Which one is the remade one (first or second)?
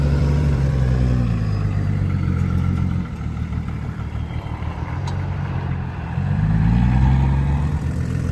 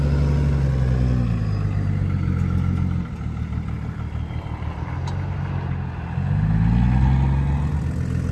first